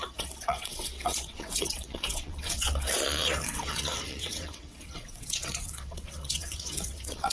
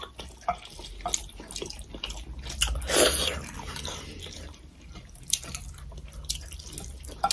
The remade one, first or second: first